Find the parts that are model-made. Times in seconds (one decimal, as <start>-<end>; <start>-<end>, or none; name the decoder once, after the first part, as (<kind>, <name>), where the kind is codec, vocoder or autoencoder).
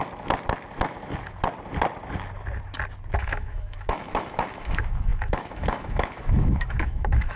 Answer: 3.2-7.4 (autoencoder, DAC-VAE)